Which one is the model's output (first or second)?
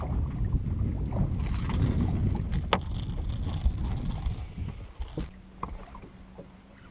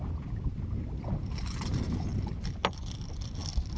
second